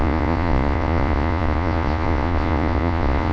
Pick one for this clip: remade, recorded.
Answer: remade